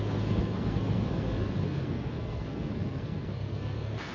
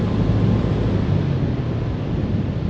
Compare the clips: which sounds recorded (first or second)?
second